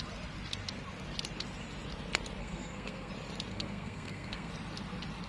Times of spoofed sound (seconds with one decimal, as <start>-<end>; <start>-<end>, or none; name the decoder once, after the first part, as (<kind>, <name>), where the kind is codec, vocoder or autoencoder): 2.4-3.1 (codec, SNAC); 3.5-4.5